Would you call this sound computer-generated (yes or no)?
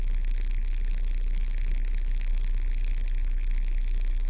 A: yes